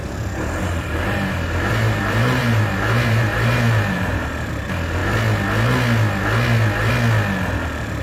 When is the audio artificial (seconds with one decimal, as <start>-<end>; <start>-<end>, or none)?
0.0-4.5